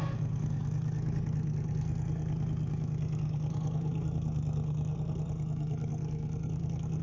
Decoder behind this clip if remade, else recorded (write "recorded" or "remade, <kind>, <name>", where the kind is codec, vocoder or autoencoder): remade, codec, SNAC